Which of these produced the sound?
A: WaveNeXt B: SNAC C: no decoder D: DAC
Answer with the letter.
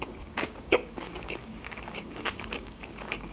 D